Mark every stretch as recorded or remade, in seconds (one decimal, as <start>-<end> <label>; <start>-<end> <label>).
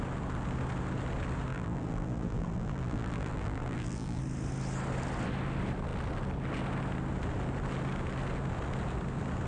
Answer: 0.0-1.5 recorded; 1.5-4.2 remade; 4.2-9.5 recorded